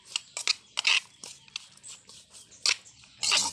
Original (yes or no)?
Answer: yes